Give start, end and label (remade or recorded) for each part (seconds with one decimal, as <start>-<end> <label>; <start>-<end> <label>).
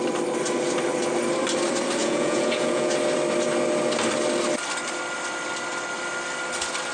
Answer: 0.0-2.0 recorded; 2.0-2.9 remade; 2.9-6.9 recorded